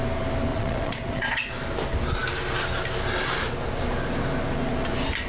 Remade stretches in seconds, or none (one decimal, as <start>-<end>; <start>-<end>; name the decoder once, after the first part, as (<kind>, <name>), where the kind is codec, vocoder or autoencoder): 0.5-1.5 (vocoder, Vocos)